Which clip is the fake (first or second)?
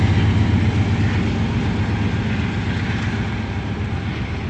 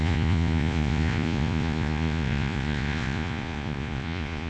second